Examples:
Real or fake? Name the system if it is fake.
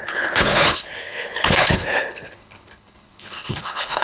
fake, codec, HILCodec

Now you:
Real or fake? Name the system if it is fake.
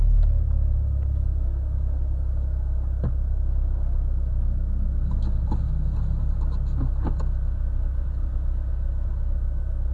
real